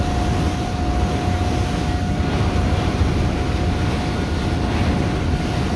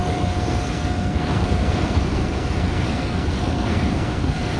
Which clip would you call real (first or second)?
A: first